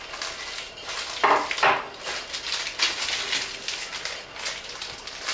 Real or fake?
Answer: real